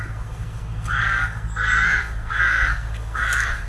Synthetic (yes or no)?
yes